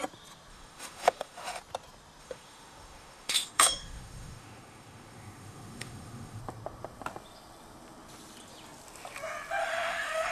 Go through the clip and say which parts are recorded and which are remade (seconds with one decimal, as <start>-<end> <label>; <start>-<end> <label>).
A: 0.0-0.5 recorded; 0.5-1.6 remade; 1.6-2.2 recorded; 2.2-6.4 remade; 6.4-9.6 recorded; 9.6-10.3 remade